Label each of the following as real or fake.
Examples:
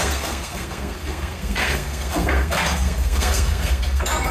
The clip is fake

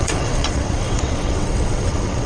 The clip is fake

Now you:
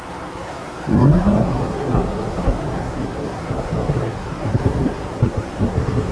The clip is fake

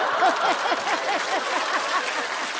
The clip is real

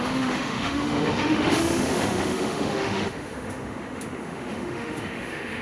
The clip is fake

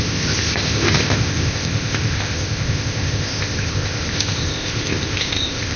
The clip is fake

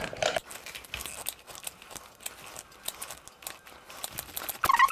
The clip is real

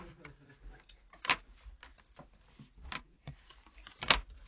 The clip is real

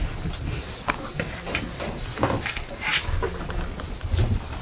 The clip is real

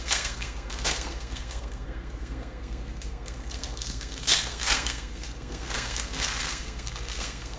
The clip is fake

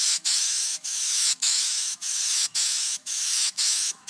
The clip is fake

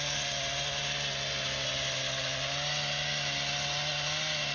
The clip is real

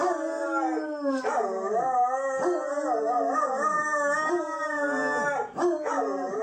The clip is fake